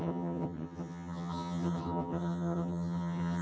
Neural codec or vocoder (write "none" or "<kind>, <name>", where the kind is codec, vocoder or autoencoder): vocoder, HiFi-GAN